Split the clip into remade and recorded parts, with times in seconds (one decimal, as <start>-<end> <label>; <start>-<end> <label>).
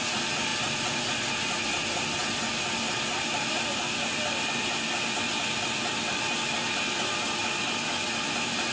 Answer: 0.0-8.7 recorded